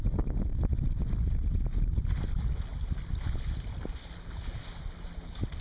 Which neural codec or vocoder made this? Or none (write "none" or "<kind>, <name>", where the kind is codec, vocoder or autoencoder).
none